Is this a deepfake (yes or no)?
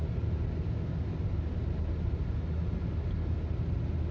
no